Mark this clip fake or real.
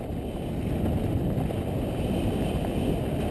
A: real